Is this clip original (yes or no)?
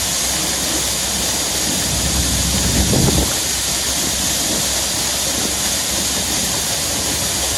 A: yes